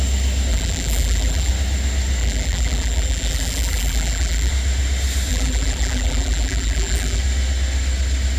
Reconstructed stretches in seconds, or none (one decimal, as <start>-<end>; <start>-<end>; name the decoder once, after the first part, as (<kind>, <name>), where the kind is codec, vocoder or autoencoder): 0.5-1.5 (vocoder, BigVGAN v2); 2.2-4.5; 5.3-7.2